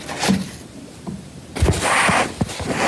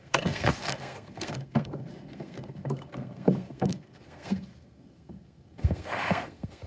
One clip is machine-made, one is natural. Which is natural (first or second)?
first